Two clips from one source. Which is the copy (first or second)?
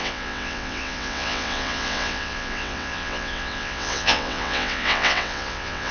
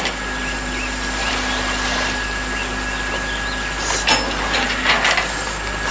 first